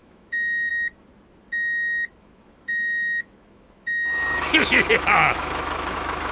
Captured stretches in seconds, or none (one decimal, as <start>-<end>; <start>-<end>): 0.7-2.2